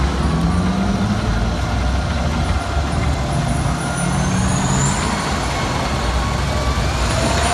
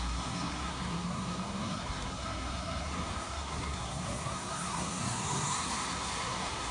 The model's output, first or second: second